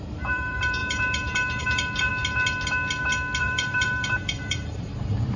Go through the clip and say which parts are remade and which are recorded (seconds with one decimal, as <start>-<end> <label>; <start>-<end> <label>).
0.0-2.1 remade; 2.1-3.4 recorded; 3.4-5.4 remade

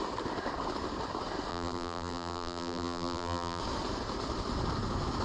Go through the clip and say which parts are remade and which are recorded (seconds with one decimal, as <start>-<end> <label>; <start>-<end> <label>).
0.0-1.5 recorded; 1.5-3.6 remade; 3.6-5.2 recorded

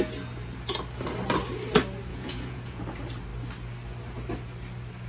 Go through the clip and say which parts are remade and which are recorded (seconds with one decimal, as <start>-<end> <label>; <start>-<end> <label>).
0.0-2.1 recorded; 2.1-2.8 remade; 2.8-5.1 recorded

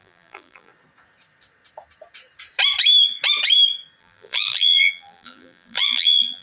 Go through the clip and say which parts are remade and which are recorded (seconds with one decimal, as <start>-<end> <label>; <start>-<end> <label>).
0.0-0.7 remade; 0.7-4.0 recorded; 4.0-6.4 remade

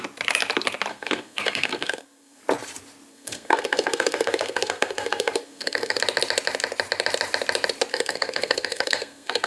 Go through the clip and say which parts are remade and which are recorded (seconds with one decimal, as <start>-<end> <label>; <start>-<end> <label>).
0.0-0.9 recorded; 0.9-2.4 remade; 2.4-3.1 recorded; 3.1-6.0 remade; 6.0-7.9 recorded; 7.9-9.5 remade

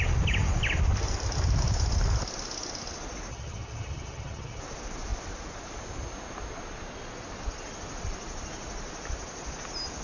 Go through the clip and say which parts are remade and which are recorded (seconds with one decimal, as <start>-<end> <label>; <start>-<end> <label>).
0.0-3.3 recorded; 3.3-4.6 remade; 4.6-10.0 recorded

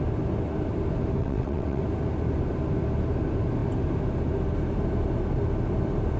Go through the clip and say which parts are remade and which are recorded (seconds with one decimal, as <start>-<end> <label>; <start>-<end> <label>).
0.0-1.2 recorded; 1.2-1.8 remade; 1.8-6.2 recorded